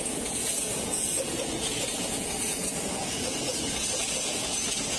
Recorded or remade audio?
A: remade